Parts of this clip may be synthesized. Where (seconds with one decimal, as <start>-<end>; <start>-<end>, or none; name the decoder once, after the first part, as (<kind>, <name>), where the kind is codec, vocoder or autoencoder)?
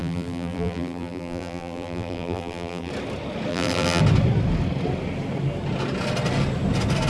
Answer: 0.0-2.9 (vocoder, BigVGAN v2); 3.5-4.0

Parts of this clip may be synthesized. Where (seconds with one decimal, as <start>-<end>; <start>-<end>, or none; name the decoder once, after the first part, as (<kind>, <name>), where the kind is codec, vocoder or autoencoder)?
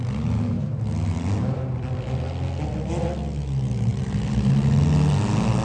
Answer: none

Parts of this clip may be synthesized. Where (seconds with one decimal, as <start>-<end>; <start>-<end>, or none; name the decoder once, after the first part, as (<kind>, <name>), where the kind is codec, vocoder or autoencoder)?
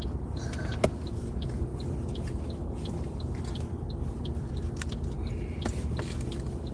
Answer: none